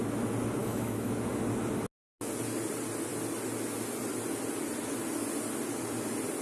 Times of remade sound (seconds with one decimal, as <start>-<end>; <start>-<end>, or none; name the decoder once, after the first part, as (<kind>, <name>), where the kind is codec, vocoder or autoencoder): 0.6-1.1 (autoencoder, DAC-VAE)